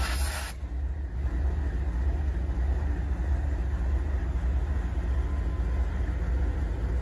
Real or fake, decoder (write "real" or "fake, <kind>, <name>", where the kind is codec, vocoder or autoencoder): real